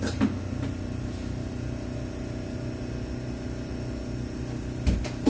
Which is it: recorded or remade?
recorded